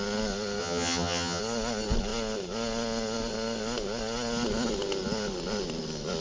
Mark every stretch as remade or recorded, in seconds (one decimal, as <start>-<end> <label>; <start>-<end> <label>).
0.0-0.6 recorded; 0.6-1.4 remade; 1.4-6.2 recorded